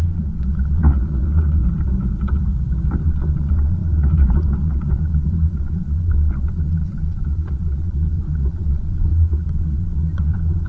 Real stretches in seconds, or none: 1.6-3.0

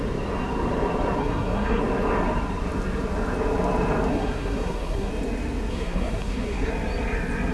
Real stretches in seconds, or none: 0.0-1.2; 1.8-4.1; 5.1-5.7; 6.7-7.5

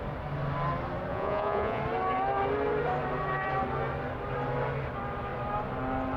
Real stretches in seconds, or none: 0.0-1.1; 1.8-6.2

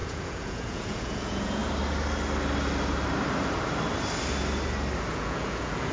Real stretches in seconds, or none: 1.6-5.1

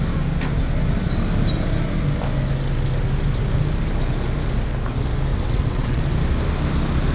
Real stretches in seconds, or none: 0.0-5.3; 6.0-7.1